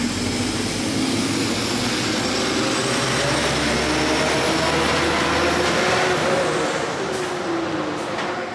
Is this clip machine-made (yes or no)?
no